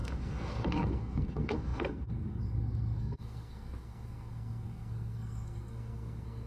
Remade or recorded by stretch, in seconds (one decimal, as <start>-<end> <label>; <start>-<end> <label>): 0.0-6.5 remade